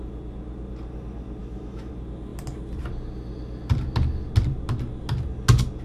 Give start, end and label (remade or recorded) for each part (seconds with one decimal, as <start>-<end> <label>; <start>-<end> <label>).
0.0-1.4 recorded; 1.4-1.9 remade; 1.9-5.8 recorded